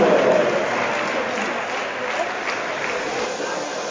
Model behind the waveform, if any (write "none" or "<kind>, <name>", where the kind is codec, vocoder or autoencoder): none